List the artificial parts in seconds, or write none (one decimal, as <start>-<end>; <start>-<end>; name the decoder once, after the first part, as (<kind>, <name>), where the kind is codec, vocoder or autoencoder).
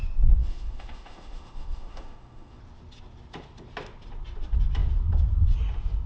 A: 0.4-2.6 (autoencoder, DAC-VAE)